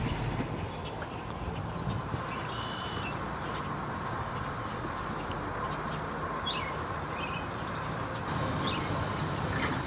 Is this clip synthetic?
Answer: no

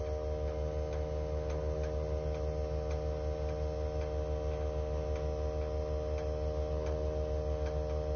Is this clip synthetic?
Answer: no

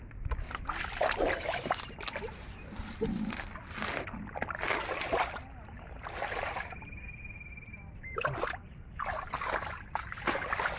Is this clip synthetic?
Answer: no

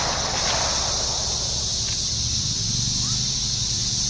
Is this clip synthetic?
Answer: no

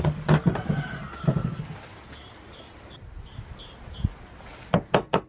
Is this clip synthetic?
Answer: no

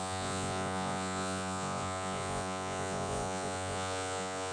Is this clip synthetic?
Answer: yes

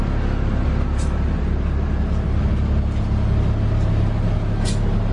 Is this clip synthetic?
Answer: no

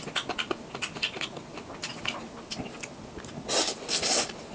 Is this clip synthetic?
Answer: no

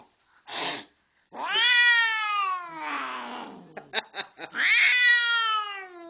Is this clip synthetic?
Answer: no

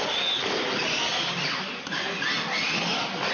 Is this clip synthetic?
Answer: no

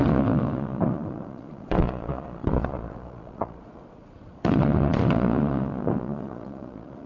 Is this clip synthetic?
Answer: yes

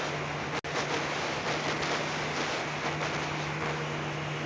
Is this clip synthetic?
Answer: no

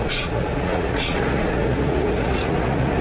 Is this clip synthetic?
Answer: yes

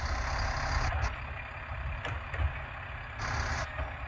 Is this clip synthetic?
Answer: no